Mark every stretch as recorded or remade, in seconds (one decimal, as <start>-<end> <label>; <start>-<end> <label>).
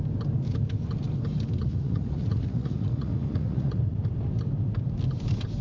0.0-1.6 recorded; 1.6-3.9 remade; 3.9-5.6 recorded